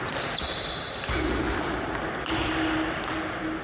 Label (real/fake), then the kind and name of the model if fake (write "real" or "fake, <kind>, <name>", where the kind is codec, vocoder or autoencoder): real